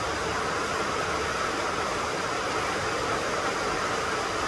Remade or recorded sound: recorded